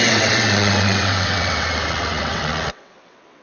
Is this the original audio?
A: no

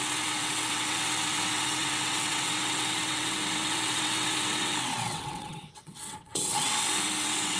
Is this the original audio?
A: no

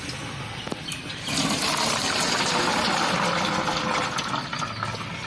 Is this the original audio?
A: yes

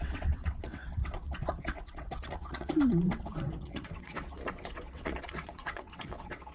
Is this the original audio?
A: no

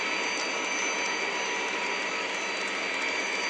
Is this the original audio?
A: yes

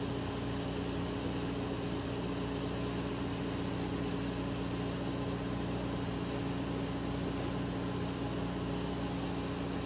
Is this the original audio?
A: yes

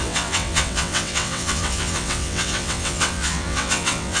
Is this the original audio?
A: no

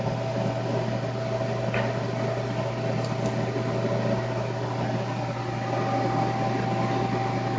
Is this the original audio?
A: yes